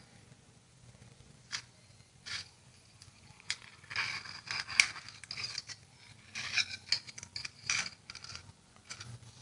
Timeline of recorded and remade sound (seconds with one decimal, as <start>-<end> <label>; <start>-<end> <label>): 0.0-3.7 remade; 3.7-8.3 recorded; 8.3-9.4 remade